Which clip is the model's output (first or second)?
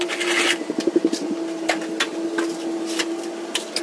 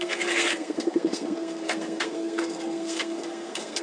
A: second